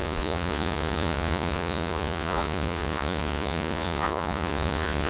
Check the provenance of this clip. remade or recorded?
remade